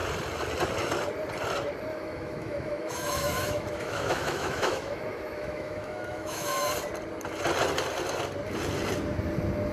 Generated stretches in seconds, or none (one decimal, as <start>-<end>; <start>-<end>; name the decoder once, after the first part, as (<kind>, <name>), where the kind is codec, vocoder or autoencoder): 1.9-6.7 (autoencoder, DAC-VAE)